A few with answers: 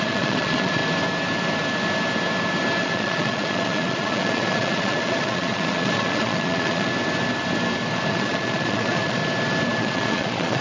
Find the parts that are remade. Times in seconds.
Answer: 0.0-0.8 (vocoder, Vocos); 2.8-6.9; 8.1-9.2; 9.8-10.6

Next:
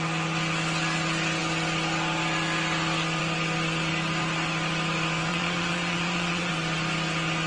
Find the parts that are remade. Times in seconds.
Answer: 5.3-6.5 (vocoder, Vocos)

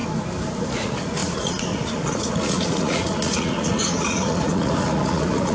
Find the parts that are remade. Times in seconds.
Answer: 0.7-5.5 (vocoder, Vocos)